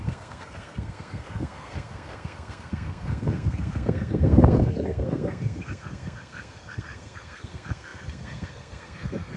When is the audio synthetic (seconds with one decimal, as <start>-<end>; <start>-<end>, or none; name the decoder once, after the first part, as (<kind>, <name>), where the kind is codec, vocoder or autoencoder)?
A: 0.0-9.4 (codec, SNAC)